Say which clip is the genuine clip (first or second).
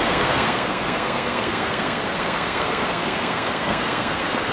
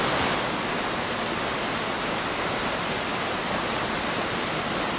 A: second